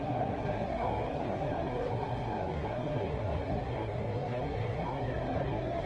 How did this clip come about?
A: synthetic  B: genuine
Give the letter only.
A